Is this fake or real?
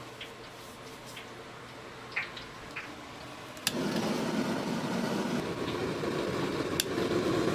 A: real